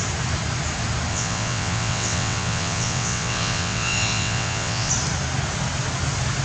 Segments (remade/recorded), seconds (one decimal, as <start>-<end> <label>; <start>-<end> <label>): 0.0-1.1 recorded; 1.1-4.9 remade; 4.9-6.4 recorded